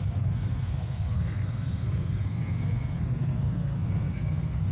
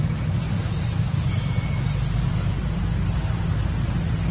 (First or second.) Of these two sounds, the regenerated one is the first